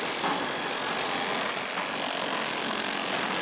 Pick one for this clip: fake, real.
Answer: real